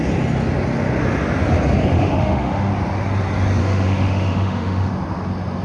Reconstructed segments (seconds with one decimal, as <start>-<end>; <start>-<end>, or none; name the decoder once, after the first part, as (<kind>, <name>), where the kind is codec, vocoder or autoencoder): 1.9-2.7 (autoencoder, DAC-VAE); 3.6-4.9